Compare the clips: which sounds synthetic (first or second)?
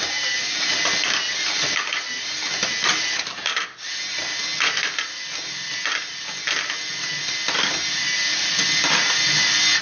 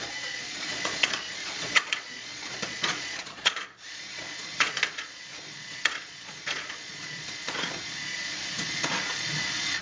second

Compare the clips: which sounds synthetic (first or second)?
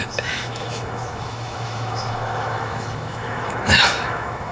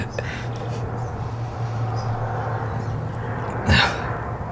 first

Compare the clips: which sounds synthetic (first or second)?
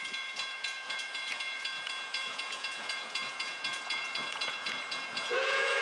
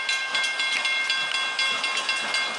first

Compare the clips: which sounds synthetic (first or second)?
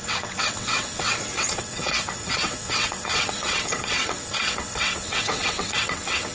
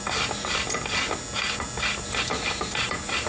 first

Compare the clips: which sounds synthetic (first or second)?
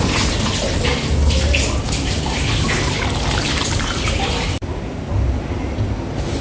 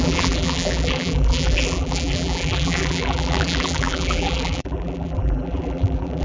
second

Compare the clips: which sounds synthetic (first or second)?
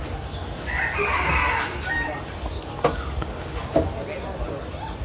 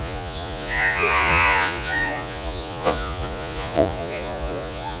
second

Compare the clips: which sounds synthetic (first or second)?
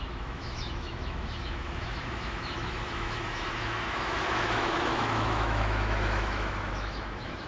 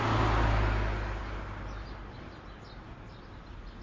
first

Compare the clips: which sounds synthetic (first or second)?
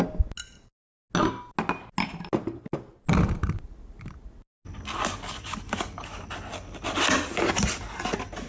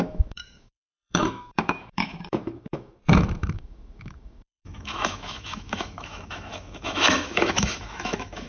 second